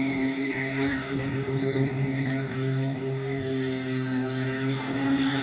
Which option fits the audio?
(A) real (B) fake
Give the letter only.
B